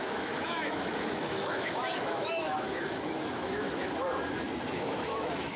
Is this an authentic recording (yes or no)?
no